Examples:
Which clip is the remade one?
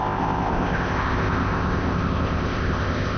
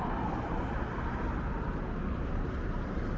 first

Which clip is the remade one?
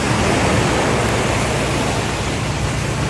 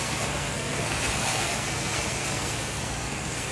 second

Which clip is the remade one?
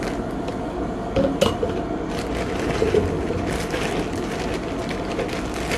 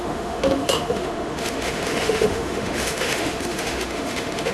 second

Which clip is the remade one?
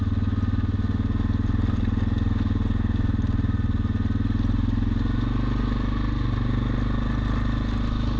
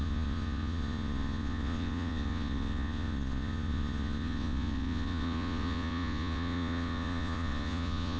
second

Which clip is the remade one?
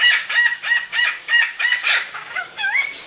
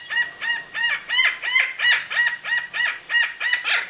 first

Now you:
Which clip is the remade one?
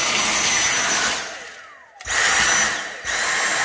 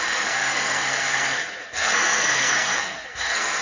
second